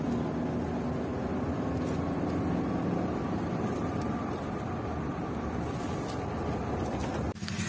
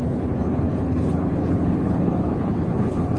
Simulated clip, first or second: second